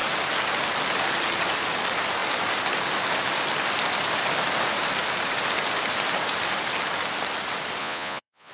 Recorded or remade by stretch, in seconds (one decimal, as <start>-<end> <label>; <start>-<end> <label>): 0.0-7.8 recorded; 7.8-8.5 remade

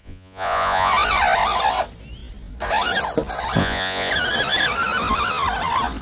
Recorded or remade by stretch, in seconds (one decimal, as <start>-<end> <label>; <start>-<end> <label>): 0.0-0.9 remade; 0.9-3.6 recorded; 3.6-4.1 remade; 4.1-6.0 recorded

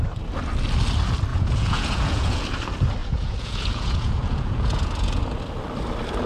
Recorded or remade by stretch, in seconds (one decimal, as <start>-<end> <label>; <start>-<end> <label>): 0.0-1.3 recorded; 1.3-2.4 remade; 2.4-3.0 recorded; 3.0-5.2 remade; 5.2-6.3 recorded

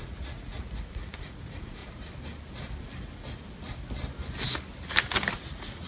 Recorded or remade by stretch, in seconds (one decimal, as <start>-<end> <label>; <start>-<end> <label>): 0.0-1.8 remade; 1.8-5.3 recorded; 5.3-5.9 remade